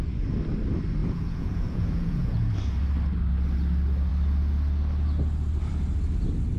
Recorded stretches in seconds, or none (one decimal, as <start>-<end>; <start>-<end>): 0.0-1.0; 2.5-6.6